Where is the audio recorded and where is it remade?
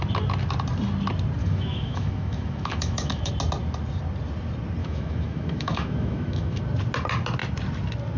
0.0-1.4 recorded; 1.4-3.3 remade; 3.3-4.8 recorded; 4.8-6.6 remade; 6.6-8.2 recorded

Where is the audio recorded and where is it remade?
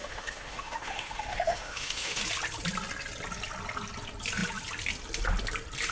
0.0-2.2 remade; 2.2-5.9 recorded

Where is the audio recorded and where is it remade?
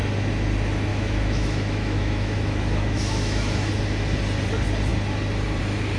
0.0-0.9 recorded; 0.9-3.7 remade; 3.7-6.0 recorded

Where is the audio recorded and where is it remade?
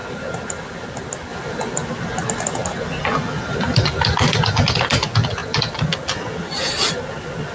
0.0-7.5 recorded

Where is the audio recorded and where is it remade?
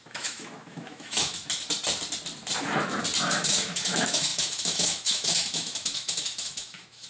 0.0-1.4 remade; 1.4-3.3 recorded; 3.3-7.1 remade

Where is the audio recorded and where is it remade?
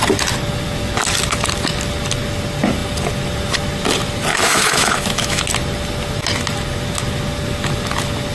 0.0-4.3 recorded; 4.3-5.4 remade; 5.4-8.3 recorded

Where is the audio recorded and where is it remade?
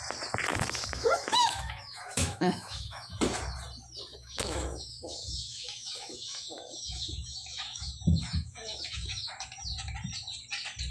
0.0-0.5 recorded; 0.5-3.2 remade; 3.2-4.1 recorded; 4.1-9.3 remade; 9.3-10.9 recorded